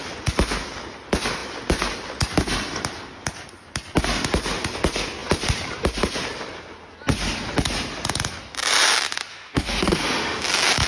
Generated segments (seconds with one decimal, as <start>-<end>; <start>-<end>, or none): 9.3-10.4

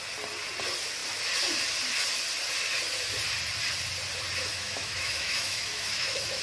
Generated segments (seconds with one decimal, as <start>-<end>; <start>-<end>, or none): 4.5-6.4

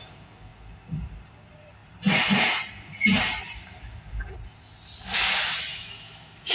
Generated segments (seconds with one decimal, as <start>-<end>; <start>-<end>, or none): 5.7-6.5

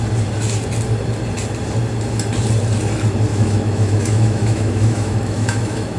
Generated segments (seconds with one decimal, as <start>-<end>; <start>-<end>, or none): 3.3-6.0

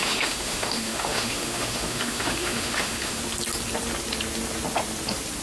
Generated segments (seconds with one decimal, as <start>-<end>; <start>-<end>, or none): 0.0-3.2

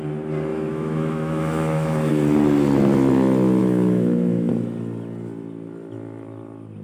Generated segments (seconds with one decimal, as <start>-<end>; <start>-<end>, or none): 0.5-2.1; 3.6-4.5